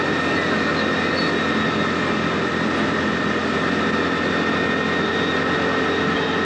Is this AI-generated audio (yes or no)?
no